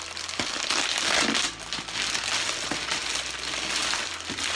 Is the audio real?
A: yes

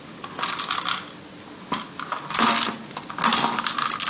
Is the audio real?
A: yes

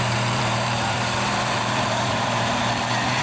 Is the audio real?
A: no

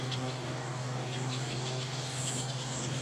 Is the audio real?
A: no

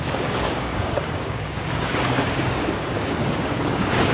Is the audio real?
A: no